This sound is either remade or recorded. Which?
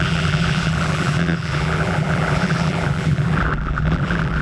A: remade